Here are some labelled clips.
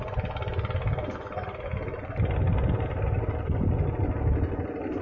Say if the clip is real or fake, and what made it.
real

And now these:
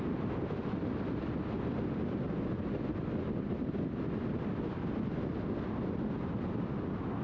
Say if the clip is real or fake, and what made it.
real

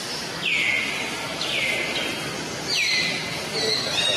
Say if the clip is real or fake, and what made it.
real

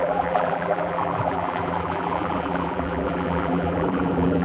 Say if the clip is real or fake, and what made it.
fake, vocoder, BigVGAN v2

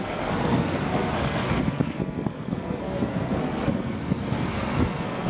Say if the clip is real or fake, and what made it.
fake, codec, SNAC